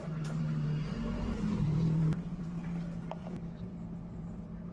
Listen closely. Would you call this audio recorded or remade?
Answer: remade